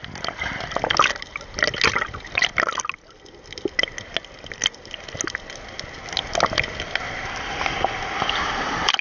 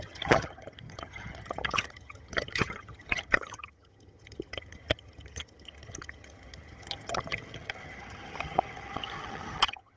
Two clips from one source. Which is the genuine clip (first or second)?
first